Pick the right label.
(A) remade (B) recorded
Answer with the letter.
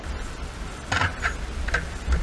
B